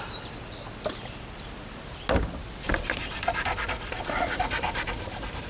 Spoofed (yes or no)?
no